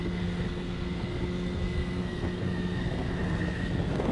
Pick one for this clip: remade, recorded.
remade